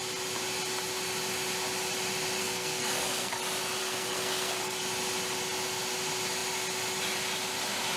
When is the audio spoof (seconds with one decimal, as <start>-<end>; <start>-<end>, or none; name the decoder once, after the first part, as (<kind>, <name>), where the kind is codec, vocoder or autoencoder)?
2.4-3.4 (codec, SNAC); 3.8-4.8